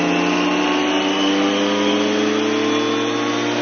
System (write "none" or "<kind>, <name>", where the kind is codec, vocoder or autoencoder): none